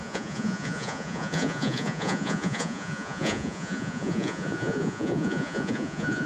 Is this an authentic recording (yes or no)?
no